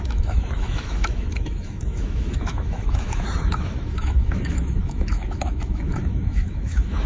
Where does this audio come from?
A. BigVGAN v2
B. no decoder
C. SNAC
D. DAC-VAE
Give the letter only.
D